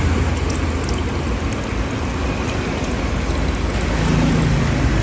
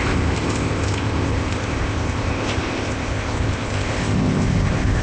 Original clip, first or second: first